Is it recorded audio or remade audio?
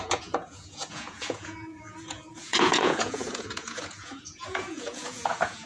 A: remade